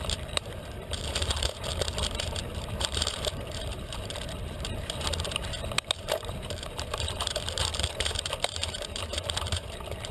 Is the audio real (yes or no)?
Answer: no